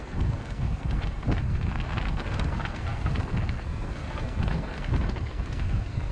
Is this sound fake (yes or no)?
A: yes